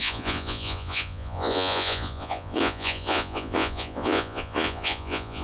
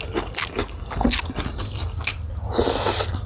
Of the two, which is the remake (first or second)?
first